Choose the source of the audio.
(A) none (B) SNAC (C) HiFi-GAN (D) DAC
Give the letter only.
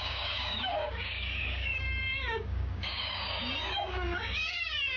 D